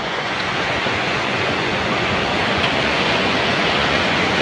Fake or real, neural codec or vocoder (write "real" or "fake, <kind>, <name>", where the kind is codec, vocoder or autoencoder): fake, vocoder, Vocos